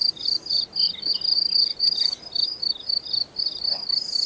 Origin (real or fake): real